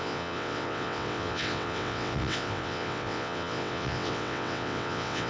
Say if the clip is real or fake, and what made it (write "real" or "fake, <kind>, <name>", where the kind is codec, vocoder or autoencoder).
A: fake, vocoder, WaveNeXt